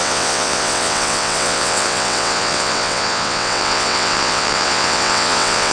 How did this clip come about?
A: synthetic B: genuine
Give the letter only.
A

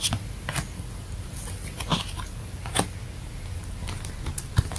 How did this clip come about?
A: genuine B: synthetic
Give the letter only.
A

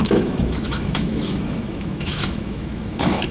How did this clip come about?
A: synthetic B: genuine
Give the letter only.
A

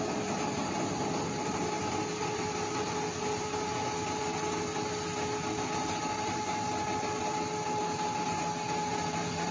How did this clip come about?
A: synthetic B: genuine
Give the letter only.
B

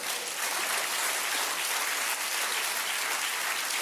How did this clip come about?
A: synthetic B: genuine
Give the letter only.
B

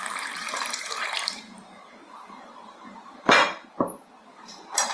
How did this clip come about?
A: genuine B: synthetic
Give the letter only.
B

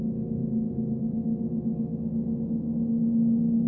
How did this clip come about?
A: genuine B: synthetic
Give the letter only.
A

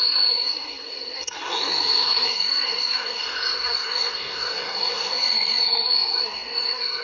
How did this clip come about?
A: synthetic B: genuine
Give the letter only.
A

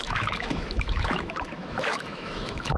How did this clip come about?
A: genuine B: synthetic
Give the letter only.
B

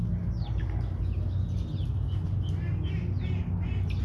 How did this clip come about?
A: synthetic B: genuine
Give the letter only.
B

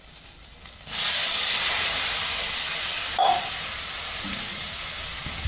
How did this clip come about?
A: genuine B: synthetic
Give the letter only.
A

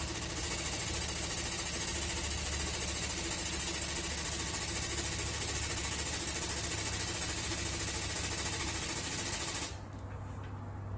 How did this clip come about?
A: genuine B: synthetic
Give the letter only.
A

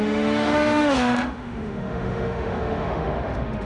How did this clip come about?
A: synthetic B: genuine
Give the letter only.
A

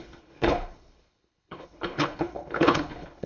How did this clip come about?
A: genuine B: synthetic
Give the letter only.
B